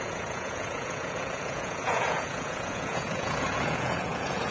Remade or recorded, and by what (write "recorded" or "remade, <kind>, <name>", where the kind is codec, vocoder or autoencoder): remade, vocoder, Vocos